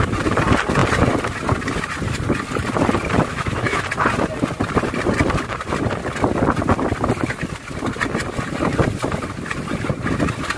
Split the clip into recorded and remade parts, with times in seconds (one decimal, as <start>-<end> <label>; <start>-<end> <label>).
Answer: 0.0-3.3 recorded; 3.3-3.8 remade; 3.8-10.6 recorded

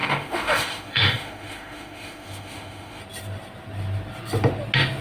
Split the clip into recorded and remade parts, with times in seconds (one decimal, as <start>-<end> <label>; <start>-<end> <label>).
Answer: 0.0-3.0 remade; 3.0-5.0 recorded

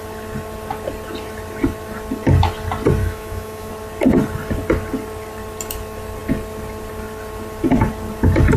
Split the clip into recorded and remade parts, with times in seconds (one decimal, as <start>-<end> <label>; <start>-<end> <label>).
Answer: 0.0-3.0 recorded; 3.0-3.7 remade; 3.7-8.6 recorded